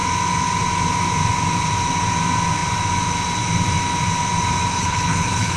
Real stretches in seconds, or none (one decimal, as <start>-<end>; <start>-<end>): 0.0-4.7